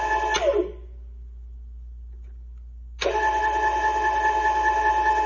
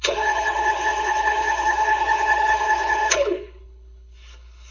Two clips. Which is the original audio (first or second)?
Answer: first